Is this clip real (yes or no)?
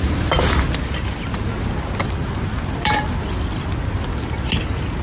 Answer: yes